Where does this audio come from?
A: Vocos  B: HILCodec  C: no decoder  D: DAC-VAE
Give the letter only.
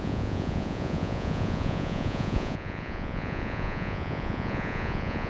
A